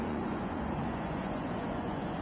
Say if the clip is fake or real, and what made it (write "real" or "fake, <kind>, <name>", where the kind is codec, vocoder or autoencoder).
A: fake, vocoder, Vocos